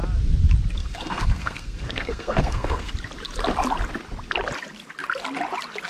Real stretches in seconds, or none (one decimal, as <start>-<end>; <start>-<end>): 0.0-0.8; 2.9-5.9